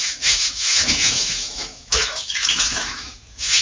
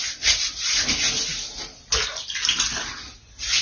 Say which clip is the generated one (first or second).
first